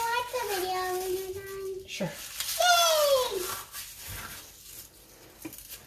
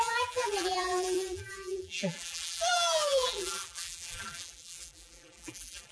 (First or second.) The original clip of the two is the first